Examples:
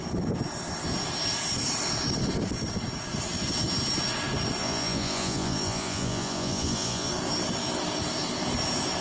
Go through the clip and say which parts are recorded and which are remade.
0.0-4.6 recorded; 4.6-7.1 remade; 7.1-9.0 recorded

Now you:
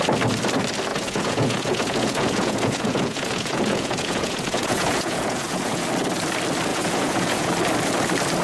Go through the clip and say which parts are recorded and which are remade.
0.0-0.9 recorded; 0.9-5.9 remade; 5.9-6.7 recorded; 6.7-7.5 remade; 7.5-8.4 recorded

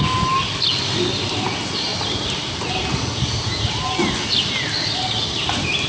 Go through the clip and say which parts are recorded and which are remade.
0.0-5.9 recorded

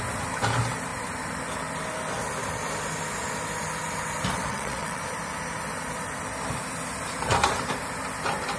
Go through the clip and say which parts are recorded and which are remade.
0.0-4.5 recorded; 4.5-5.0 remade; 5.0-8.6 recorded

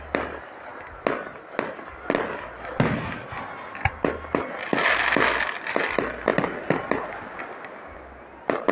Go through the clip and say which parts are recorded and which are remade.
0.0-8.7 recorded

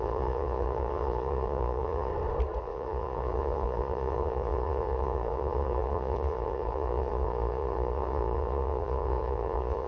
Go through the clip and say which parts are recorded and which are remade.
0.0-2.1 remade; 2.1-2.6 recorded; 2.6-9.9 remade

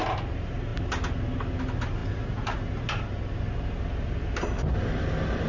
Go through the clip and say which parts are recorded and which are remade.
0.0-5.5 recorded

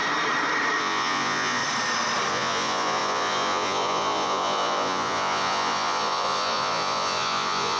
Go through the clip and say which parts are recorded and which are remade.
0.0-0.8 recorded; 0.8-1.6 remade; 1.6-2.3 recorded; 2.3-7.8 remade